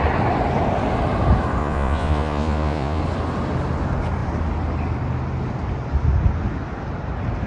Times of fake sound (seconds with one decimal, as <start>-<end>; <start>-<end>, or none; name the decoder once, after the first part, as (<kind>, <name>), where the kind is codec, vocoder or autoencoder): 1.6-3.0 (vocoder, Vocos)